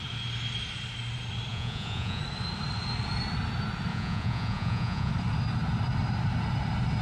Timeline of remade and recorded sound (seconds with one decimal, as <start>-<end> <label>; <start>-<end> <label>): 0.0-1.5 recorded; 1.5-2.2 remade; 2.2-3.9 recorded; 3.9-5.1 remade; 5.1-7.0 recorded